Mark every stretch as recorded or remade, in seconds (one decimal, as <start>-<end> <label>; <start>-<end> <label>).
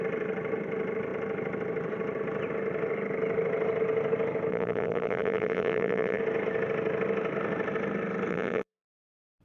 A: 0.0-4.5 recorded; 4.5-6.2 remade; 6.2-8.3 recorded; 8.3-9.4 remade